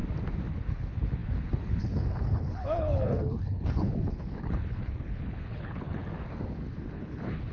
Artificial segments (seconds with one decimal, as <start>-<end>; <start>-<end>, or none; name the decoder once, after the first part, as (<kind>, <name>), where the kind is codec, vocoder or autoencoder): 0.5-6.0 (codec, HILCodec); 6.9-7.5